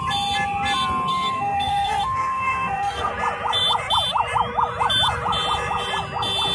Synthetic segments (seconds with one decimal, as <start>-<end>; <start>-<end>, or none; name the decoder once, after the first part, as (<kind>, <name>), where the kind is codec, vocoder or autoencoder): 1.1-3.1 (codec, SNAC)